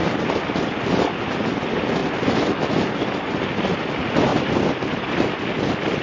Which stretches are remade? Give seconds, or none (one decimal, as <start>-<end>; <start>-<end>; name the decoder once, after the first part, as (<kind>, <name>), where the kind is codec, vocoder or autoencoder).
none